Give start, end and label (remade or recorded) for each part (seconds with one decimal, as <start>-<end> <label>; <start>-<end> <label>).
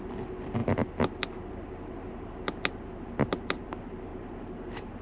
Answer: 0.0-4.1 recorded; 4.1-5.0 remade